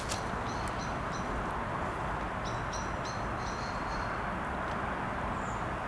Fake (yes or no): no